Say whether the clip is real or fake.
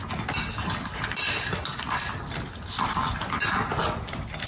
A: real